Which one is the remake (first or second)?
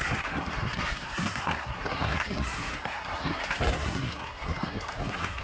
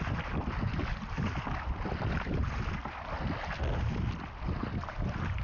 first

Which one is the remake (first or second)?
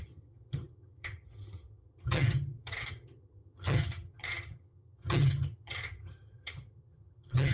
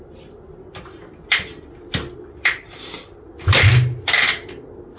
first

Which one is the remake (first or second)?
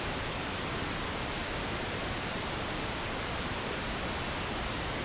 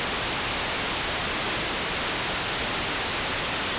first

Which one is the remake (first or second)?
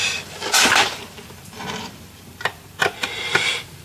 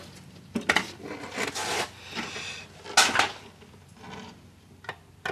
first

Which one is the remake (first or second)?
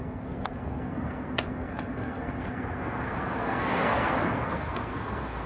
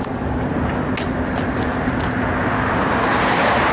first